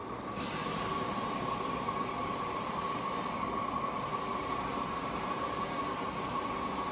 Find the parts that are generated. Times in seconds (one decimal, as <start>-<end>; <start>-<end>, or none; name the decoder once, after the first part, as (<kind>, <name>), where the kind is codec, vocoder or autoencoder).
0.0-1.4 (vocoder, BigVGAN v2); 2.2-3.0; 4.1-5.6